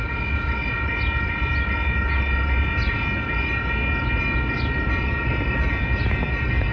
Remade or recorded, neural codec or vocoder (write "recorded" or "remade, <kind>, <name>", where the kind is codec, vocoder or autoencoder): recorded